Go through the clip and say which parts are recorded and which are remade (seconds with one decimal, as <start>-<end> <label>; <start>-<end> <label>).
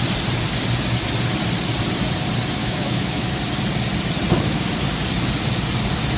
0.0-2.6 recorded; 2.6-3.3 remade; 3.3-6.2 recorded